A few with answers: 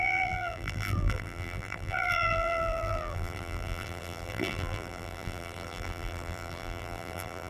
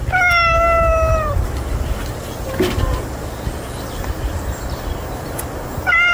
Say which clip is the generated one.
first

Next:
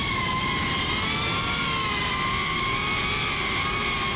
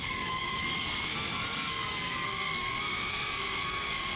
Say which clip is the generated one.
second